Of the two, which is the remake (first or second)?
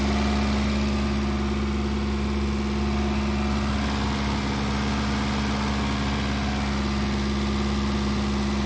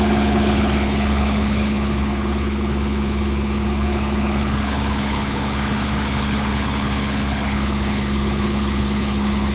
second